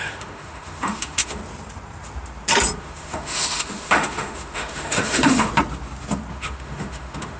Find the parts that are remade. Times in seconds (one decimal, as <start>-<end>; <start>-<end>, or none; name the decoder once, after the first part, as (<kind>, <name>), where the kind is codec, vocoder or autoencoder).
0.0-1.4 (autoencoder, DAC-VAE); 2.8-5.5; 6.3-7.4